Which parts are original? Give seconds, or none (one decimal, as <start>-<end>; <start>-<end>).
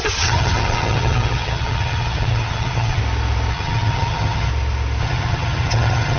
3.0-3.5; 4.5-5.0